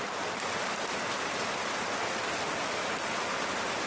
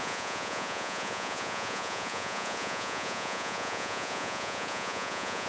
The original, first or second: first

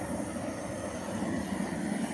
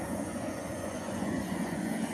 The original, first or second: first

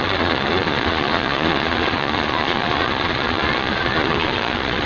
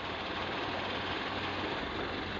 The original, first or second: second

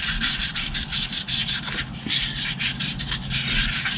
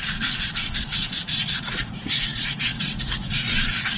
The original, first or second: first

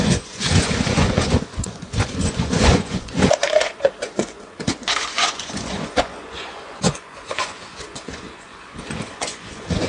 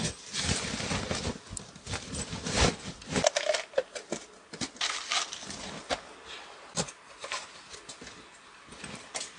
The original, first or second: second